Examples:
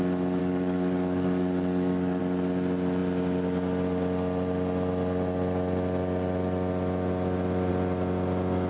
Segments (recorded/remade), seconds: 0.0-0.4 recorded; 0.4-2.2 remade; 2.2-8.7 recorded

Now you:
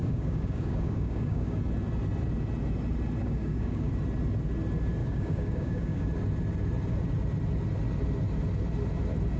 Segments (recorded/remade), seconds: 0.0-1.6 remade; 1.6-3.2 recorded; 3.2-3.9 remade; 3.9-5.0 recorded; 5.0-6.1 remade; 6.1-9.4 recorded